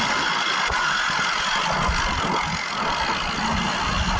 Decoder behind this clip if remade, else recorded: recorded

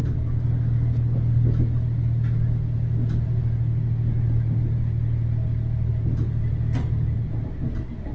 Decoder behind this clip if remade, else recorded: recorded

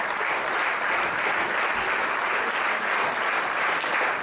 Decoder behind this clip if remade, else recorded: recorded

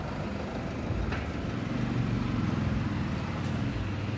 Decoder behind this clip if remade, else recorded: recorded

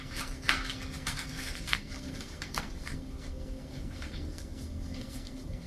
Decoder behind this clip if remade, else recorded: remade, codec, SNAC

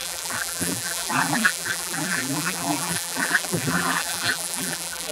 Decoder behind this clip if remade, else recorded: remade, vocoder, BigVGAN v2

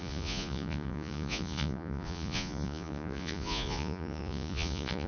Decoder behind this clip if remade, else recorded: remade, vocoder, Vocos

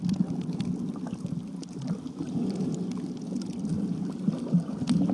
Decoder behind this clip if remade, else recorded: recorded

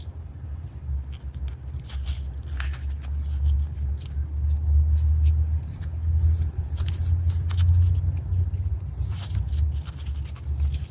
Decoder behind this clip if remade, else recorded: recorded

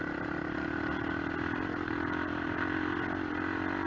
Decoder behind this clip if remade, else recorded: recorded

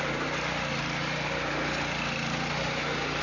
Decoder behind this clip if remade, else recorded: recorded